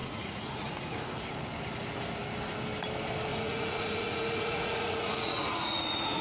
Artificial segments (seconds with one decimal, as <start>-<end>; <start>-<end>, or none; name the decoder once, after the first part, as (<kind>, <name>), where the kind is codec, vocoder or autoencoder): 0.0-0.7 (vocoder, Vocos); 3.3-6.2